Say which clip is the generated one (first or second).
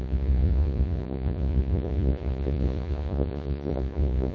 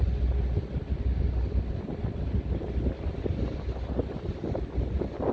first